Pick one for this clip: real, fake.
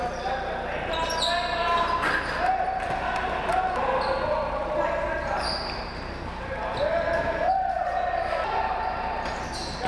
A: real